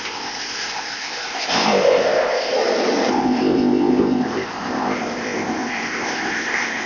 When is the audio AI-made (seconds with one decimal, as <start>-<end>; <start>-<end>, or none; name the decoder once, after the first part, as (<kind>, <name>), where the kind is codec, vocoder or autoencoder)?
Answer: 0.0-2.5 (codec, ZipCodec); 3.1-6.9